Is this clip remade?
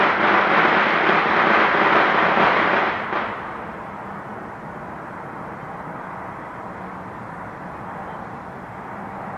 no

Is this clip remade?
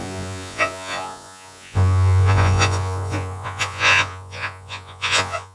yes